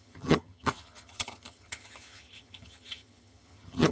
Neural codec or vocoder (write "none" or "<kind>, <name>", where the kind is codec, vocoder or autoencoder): vocoder, HiFi-GAN